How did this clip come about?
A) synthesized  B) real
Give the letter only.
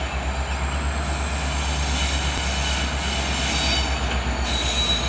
B